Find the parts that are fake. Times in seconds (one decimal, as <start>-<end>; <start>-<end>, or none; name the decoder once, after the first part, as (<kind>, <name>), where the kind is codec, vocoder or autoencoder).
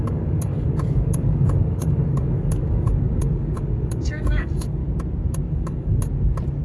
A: 0.0-4.8 (codec, DAC); 5.5-6.0